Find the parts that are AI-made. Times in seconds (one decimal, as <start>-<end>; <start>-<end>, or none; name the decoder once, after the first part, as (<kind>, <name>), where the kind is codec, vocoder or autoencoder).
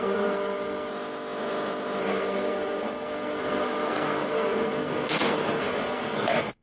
0.0-0.9 (codec, SNAC); 2.0-6.6